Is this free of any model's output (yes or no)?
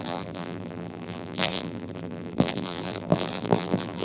no